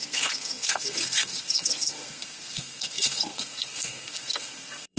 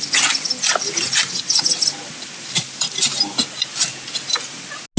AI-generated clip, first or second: first